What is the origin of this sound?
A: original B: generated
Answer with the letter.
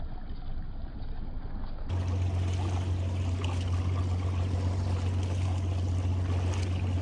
A